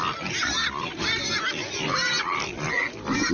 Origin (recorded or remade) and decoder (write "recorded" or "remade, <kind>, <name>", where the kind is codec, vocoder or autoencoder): recorded